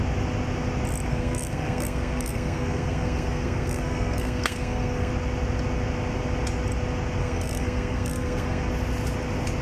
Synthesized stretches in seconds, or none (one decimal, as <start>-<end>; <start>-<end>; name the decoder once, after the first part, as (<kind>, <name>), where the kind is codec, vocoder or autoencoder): 1.1-5.1 (codec, SNAC); 7.2-8.7